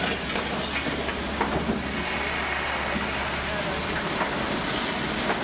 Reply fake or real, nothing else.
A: real